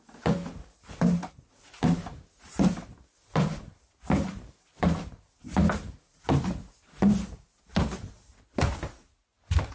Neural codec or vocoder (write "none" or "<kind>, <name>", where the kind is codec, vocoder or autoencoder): none